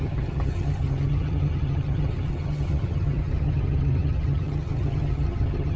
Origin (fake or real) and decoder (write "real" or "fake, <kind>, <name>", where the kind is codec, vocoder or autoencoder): fake, vocoder, HiFi-GAN